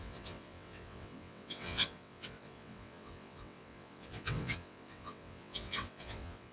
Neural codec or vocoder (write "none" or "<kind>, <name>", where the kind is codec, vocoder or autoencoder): vocoder, WaveNeXt